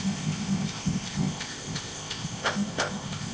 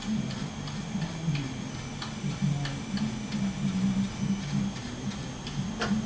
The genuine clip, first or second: second